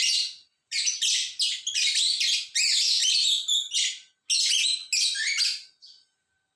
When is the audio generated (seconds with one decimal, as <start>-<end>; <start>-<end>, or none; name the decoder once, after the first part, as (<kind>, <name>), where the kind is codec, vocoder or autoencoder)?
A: none